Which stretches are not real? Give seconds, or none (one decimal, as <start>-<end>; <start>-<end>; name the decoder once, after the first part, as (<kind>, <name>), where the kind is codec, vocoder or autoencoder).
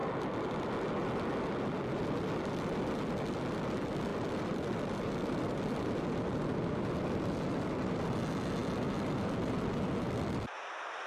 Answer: none